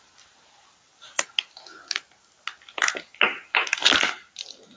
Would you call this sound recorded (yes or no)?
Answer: yes